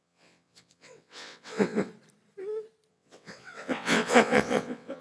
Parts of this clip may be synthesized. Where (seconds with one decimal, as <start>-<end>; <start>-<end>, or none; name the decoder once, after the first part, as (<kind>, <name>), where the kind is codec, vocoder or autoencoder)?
0.0-1.9 (vocoder, WaveNeXt); 2.9-5.0